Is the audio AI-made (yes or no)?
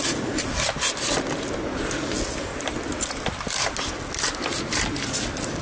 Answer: no